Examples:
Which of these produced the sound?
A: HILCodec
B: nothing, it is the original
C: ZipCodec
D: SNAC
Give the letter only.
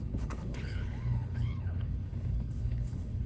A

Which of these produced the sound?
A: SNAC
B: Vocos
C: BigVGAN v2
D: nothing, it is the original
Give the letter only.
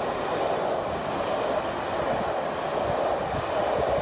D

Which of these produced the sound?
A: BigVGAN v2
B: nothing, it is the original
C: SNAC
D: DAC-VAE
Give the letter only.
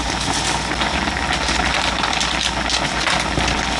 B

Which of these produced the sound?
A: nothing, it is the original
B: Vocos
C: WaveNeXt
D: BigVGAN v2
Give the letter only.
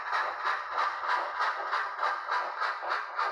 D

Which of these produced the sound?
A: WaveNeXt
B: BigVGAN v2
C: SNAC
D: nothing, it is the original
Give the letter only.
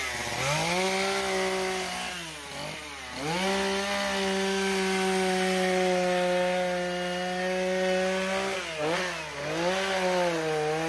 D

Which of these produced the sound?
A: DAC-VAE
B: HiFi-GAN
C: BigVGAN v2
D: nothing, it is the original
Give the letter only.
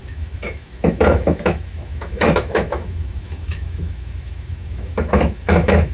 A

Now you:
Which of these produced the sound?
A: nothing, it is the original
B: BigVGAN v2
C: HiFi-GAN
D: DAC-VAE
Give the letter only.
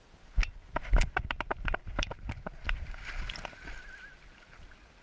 A